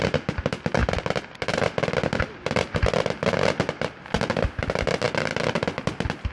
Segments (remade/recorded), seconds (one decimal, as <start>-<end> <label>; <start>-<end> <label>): 0.0-6.3 recorded